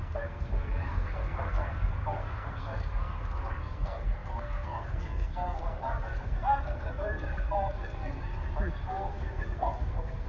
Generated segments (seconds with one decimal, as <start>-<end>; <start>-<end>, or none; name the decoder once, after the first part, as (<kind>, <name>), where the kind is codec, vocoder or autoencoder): 0.0-8.3 (codec, SNAC); 8.9-10.3